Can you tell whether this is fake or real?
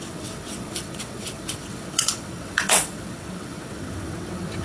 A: fake